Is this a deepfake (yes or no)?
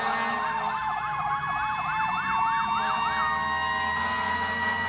no